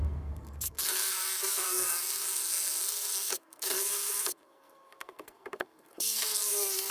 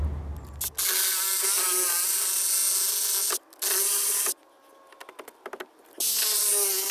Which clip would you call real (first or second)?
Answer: second